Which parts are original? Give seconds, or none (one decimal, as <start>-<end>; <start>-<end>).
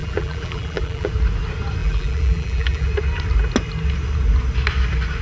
1.1-1.8; 2.9-5.2